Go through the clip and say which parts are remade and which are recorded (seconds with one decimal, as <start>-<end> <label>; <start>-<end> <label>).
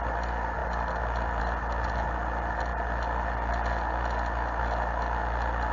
0.0-5.7 recorded